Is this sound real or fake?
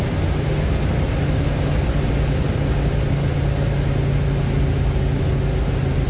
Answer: real